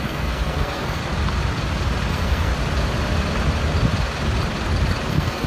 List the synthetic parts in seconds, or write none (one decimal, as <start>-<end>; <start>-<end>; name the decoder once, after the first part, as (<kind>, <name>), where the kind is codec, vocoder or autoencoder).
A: 0.0-1.0 (codec, SNAC); 2.1-2.5; 5.1-5.5

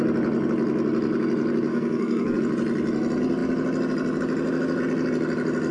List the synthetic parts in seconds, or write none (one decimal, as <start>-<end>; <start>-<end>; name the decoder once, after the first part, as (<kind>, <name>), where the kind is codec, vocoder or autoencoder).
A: 1.7-2.4 (codec, SNAC)

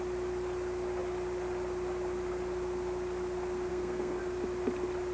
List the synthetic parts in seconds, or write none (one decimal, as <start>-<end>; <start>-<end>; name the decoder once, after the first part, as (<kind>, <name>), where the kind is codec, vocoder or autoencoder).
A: 3.7-4.2 (codec, SNAC)

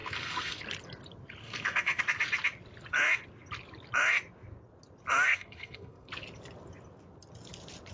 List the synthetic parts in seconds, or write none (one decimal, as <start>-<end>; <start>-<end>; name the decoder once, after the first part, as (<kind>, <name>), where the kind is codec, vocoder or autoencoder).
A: 0.0-0.6 (codec, SNAC); 1.4-2.0; 5.3-6.1

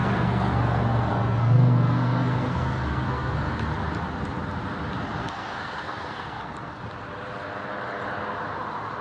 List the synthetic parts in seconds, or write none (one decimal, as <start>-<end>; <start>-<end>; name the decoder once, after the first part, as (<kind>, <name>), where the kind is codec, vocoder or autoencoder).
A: 0.0-3.5 (codec, SNAC); 5.2-6.8